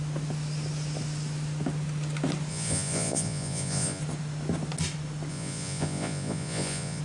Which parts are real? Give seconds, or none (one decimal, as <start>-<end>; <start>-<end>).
0.0-2.5; 4.0-5.3